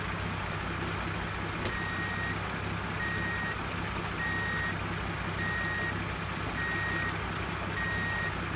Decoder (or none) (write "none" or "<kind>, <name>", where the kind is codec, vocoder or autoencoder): none